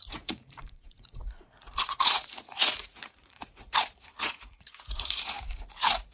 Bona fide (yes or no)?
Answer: no